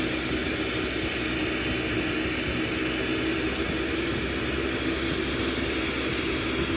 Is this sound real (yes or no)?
yes